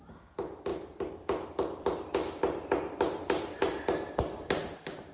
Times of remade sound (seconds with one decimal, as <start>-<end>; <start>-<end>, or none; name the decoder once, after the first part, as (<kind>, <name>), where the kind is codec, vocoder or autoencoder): 0.7-3.8 (vocoder, BigVGAN v2)

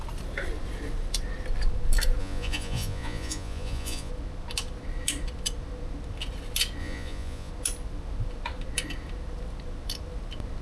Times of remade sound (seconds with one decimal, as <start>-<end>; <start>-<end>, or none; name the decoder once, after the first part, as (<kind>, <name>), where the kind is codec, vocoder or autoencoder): 2.2-4.1 (vocoder, Vocos); 6.8-7.5